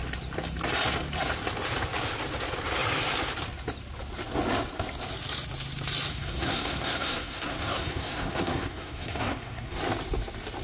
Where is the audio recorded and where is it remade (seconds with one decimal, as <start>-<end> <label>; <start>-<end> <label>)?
0.0-6.1 recorded; 6.1-9.8 remade; 9.8-10.6 recorded